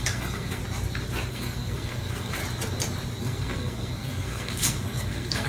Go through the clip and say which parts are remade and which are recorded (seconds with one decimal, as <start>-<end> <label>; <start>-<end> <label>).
0.0-0.6 remade; 0.6-1.3 recorded; 1.3-2.4 remade; 2.4-3.2 recorded; 3.2-5.5 remade